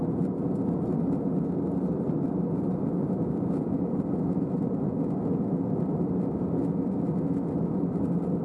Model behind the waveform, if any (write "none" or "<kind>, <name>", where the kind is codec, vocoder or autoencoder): none